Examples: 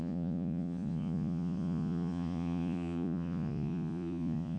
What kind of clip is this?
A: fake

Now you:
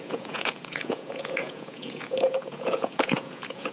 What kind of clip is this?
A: fake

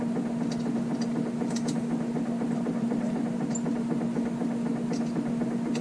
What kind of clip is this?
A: real